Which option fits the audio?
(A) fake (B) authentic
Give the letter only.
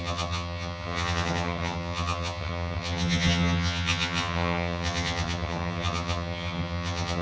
A